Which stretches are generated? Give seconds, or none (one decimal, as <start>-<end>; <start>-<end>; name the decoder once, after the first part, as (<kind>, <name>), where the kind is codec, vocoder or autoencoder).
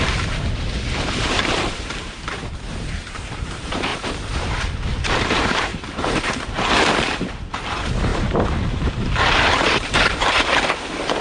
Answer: 0.0-11.2 (vocoder, BigVGAN v2)